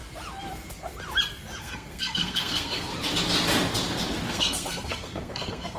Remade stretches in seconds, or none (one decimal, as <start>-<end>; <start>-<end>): 1.6-2.9; 4.3-5.8